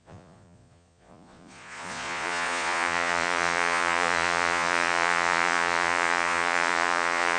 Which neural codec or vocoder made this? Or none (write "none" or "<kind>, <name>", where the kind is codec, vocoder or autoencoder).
vocoder, Vocos